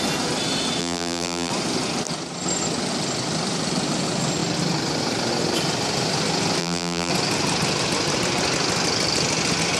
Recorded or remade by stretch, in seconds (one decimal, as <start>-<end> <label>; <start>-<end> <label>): 0.0-0.8 recorded; 0.8-1.5 remade; 1.5-6.6 recorded; 6.6-7.1 remade; 7.1-9.8 recorded